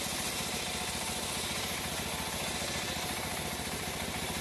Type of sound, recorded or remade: recorded